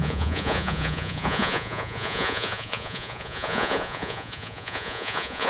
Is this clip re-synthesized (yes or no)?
yes